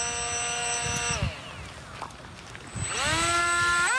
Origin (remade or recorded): recorded